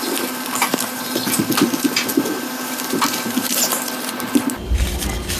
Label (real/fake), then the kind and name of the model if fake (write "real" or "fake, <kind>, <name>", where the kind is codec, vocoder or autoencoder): real